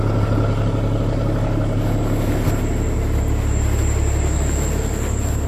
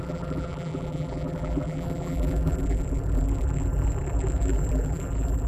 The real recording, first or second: first